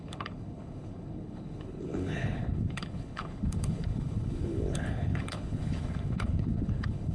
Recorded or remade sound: remade